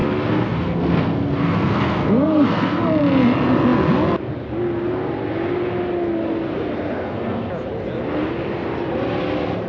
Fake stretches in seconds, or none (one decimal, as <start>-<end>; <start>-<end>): 0.0-2.8; 6.7-7.5